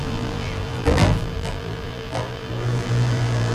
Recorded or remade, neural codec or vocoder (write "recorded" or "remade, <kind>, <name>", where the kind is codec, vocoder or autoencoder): remade, vocoder, BigVGAN v2